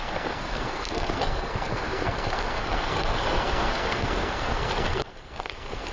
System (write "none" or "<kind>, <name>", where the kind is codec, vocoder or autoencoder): codec, SNAC